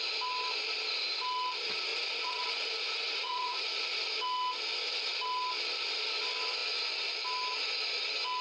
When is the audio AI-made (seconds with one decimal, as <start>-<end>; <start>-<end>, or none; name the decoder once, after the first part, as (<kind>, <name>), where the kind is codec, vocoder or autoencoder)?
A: 1.9-4.0 (vocoder, Vocos)